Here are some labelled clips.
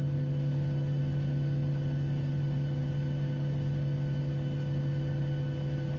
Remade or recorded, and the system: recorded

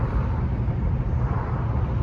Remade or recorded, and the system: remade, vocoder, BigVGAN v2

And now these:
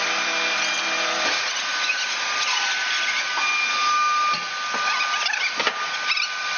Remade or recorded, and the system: recorded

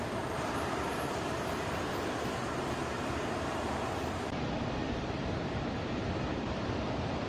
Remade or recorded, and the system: remade, vocoder, BigVGAN v2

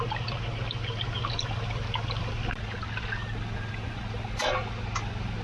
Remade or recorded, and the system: recorded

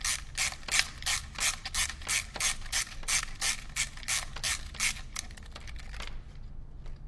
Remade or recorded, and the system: recorded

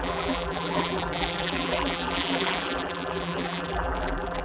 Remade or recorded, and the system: remade, vocoder, BigVGAN v2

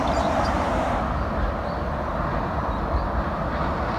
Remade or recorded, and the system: recorded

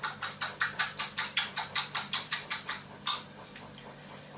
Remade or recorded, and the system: remade, vocoder, BigVGAN v2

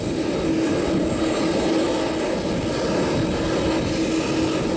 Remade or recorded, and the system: recorded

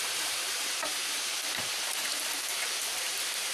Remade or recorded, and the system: remade, vocoder, BigVGAN v2